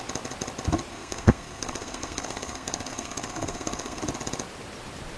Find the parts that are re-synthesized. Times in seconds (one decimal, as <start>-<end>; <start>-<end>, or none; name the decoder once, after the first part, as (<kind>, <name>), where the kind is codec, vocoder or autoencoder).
0.9-4.0 (codec, SNAC)